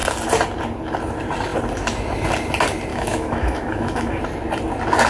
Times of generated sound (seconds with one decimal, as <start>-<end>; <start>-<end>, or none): 2.9-4.2